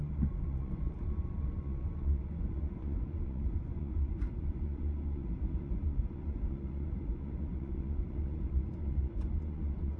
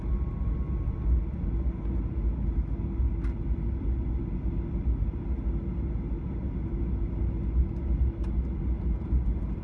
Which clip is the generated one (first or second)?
first